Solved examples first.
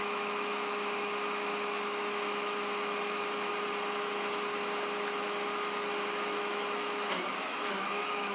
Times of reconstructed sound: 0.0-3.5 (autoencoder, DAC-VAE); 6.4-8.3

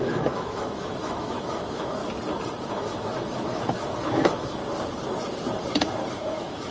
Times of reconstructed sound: 0.0-2.0 (autoencoder, DAC-VAE); 2.7-4.6; 6.1-6.7

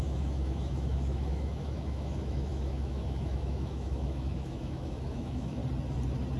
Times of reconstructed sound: 0.0-5.6 (autoencoder, DAC-VAE)